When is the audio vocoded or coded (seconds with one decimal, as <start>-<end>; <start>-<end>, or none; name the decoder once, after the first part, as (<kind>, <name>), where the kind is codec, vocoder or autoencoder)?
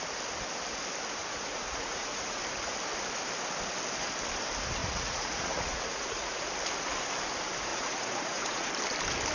1.2-2.4 (vocoder, Vocos); 4.8-6.5; 7.7-8.7